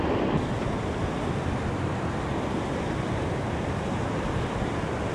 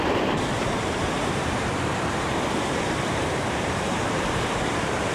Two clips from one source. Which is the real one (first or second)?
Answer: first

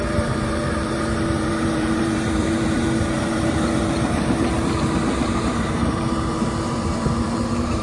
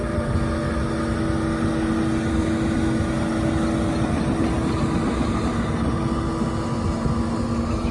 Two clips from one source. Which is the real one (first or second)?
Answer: second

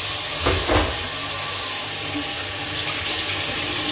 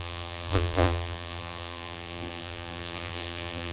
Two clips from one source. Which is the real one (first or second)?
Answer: first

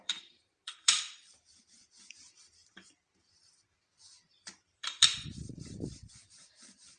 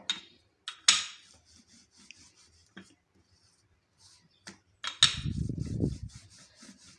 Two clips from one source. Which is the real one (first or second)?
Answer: second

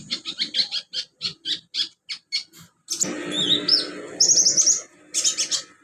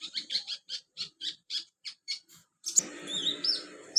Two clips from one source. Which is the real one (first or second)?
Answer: first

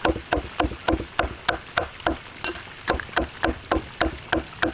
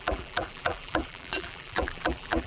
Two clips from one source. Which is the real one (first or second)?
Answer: first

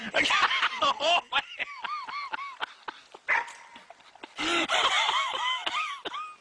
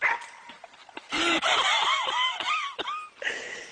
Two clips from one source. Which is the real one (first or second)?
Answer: first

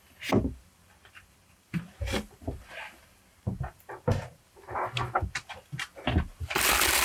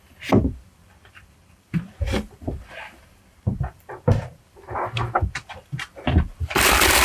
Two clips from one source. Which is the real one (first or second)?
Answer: first